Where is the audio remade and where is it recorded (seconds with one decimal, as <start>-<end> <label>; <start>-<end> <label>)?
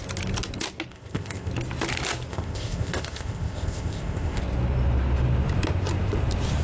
0.0-0.9 recorded; 0.9-1.5 remade; 1.5-2.3 recorded; 2.3-4.4 remade; 4.4-6.6 recorded